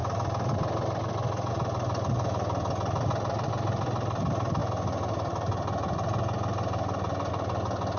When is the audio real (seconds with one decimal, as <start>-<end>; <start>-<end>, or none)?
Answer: 0.0-8.0